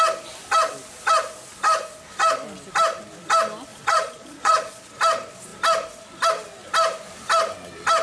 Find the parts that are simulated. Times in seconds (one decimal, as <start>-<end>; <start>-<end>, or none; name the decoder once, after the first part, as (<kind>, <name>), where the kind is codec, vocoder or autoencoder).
3.7-4.8 (vocoder, Vocos)